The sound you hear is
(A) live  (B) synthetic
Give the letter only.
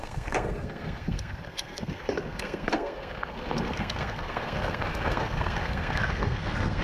B